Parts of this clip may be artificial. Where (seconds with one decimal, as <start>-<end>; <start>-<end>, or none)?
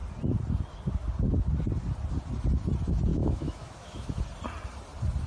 3.1-4.2